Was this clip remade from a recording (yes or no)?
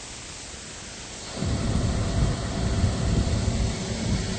no